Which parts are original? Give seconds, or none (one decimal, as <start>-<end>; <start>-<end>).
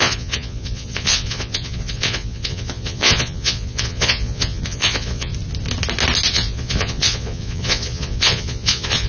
5.3-6.3